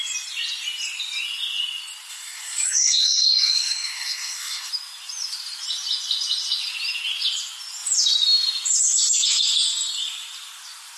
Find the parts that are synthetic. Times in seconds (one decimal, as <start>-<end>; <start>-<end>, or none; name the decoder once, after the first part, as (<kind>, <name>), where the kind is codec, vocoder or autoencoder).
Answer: 2.1-4.7 (codec, SNAC)